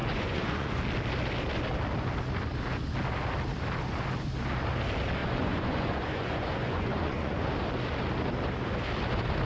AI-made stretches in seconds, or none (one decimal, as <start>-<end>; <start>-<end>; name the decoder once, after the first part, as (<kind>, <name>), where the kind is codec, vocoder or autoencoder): 0.0-0.8 (vocoder, Vocos); 5.2-7.5